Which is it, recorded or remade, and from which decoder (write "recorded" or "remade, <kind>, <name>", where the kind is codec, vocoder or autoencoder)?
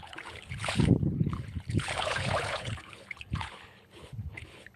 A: remade, codec, HILCodec